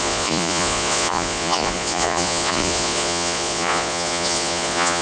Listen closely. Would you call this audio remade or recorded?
remade